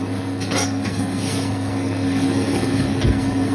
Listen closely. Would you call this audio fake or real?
fake